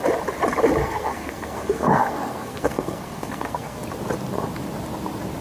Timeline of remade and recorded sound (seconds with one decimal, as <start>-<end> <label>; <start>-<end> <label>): 0.0-0.8 recorded; 0.8-3.8 remade; 3.8-5.4 recorded